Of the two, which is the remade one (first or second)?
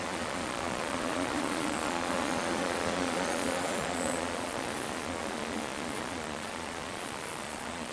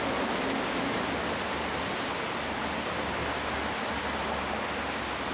first